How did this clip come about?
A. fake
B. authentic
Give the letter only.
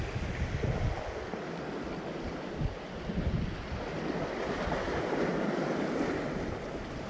B